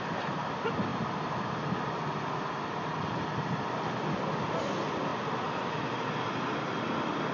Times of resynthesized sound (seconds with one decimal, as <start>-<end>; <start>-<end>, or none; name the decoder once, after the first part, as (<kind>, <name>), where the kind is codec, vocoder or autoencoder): none